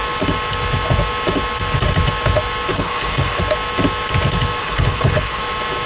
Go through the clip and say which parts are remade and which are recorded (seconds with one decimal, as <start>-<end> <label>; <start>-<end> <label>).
0.0-2.7 recorded; 2.7-3.4 remade; 3.4-4.6 recorded; 4.6-5.4 remade; 5.4-5.9 recorded